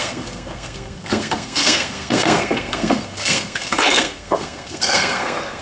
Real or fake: fake